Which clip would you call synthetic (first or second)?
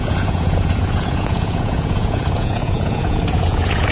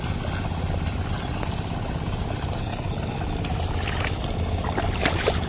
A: first